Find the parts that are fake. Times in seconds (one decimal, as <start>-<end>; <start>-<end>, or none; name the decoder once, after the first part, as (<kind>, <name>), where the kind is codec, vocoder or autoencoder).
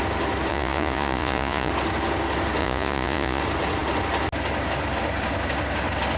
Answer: 0.5-1.7 (vocoder, Vocos); 2.6-3.4